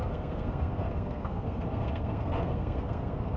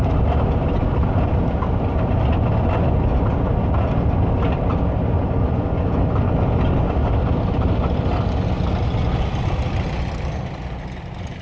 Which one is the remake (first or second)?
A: first